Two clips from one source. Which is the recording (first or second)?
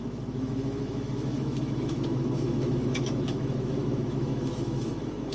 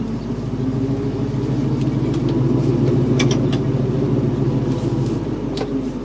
second